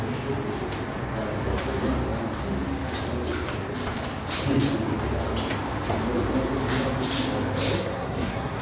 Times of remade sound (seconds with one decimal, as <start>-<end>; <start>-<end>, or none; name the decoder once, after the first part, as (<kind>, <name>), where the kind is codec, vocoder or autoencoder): 7.7-8.6 (codec, SNAC)